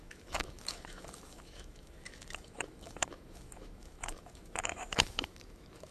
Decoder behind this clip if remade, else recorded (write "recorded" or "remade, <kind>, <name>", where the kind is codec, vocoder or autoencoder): remade, autoencoder, DAC-VAE